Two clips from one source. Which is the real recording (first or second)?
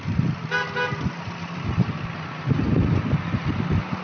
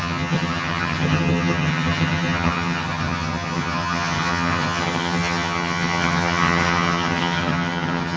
first